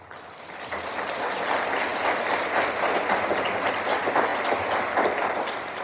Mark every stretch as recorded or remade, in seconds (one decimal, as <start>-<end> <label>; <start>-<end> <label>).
0.0-5.8 recorded